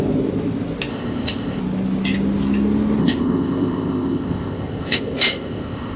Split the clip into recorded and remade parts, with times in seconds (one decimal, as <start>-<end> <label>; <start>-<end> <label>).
0.0-0.9 recorded; 0.9-1.6 remade; 1.6-3.0 recorded; 3.0-6.0 remade